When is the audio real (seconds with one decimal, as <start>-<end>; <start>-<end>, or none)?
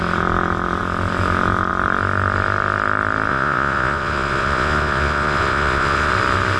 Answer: 0.0-3.3; 6.1-6.6